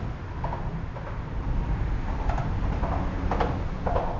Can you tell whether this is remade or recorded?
recorded